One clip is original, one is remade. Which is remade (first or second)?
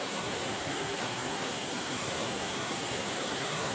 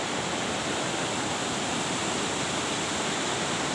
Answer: first